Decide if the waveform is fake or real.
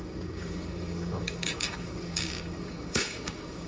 fake